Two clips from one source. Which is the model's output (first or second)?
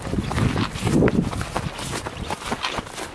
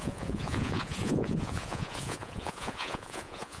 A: second